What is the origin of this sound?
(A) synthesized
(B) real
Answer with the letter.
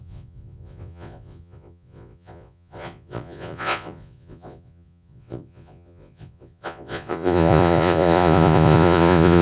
A